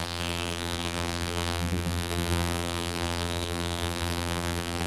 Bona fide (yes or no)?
no